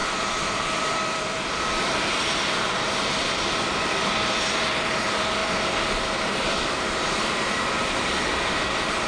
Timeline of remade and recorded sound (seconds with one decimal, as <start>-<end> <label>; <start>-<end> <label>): 0.0-5.4 remade; 5.4-6.6 recorded; 6.6-9.1 remade